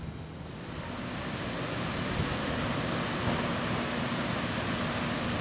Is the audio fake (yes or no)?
no